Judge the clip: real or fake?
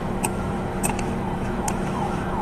fake